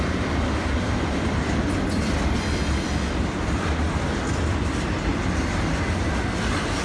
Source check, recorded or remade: recorded